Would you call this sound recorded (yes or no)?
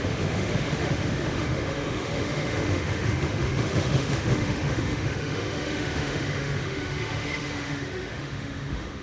no